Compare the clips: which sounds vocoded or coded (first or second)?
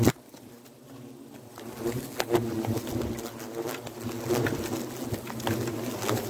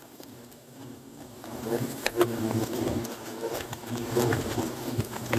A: second